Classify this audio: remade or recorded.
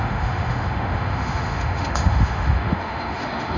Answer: remade